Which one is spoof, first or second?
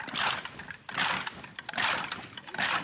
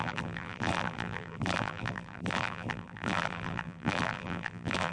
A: second